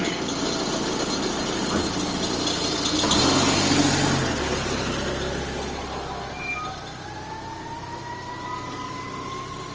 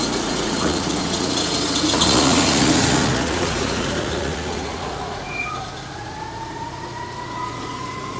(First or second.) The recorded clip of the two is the first